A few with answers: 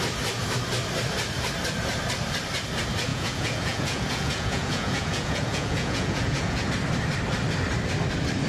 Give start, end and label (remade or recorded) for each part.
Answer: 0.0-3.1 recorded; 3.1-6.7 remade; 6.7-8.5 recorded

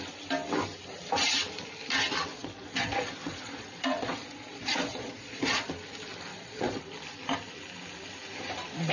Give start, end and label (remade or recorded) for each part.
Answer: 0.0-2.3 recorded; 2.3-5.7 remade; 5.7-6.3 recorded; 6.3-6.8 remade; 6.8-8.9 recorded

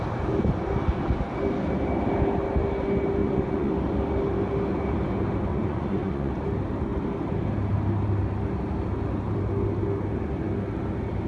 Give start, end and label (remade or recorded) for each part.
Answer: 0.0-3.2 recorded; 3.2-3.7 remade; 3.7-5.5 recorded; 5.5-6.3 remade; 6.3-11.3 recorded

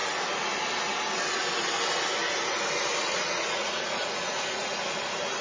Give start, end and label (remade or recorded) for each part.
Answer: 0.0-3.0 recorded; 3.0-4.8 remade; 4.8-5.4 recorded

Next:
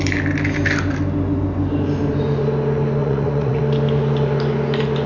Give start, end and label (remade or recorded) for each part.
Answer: 0.0-3.0 recorded; 3.0-3.6 remade; 3.6-5.1 recorded